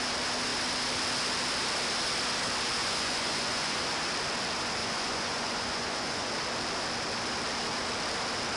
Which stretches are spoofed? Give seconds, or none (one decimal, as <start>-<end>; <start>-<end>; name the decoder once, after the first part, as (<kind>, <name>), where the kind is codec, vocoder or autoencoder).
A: 2.8-3.8 (vocoder, Vocos); 4.8-6.3